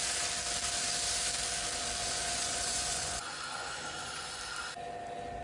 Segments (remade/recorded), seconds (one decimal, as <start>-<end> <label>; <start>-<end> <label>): 0.0-2.0 recorded; 2.0-4.4 remade; 4.4-5.4 recorded